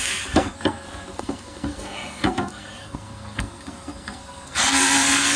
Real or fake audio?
fake